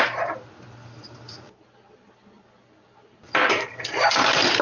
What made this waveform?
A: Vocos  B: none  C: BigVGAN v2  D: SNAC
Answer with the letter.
B